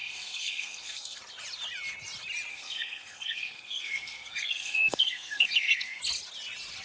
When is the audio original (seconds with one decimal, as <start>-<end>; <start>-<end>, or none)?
1.2-2.5; 6.0-6.8

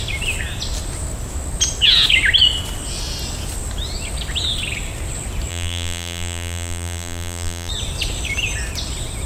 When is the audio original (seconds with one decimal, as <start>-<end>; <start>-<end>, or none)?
0.0-5.5; 7.7-9.3

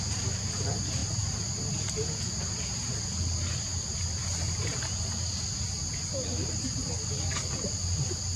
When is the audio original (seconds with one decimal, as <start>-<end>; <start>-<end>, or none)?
0.0-8.4

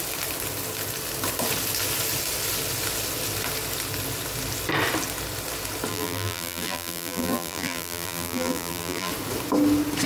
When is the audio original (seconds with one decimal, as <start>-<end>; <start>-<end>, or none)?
0.0-5.9; 9.1-10.1